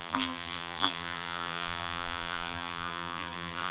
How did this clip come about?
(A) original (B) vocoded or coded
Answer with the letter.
B